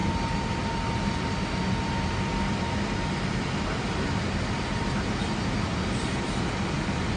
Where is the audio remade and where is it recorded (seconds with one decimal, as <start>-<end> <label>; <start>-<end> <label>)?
0.0-7.2 recorded